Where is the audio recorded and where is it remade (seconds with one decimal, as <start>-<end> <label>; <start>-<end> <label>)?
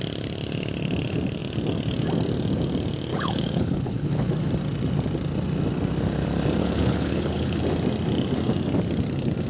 0.0-3.1 recorded; 3.1-4.3 remade; 4.3-6.6 recorded; 6.6-7.6 remade; 7.6-9.5 recorded